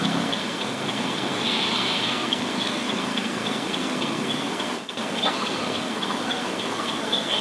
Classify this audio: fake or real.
fake